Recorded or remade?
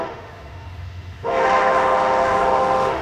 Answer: remade